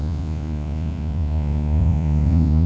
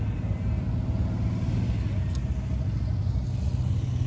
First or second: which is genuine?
second